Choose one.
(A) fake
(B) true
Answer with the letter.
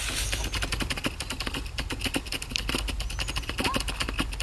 B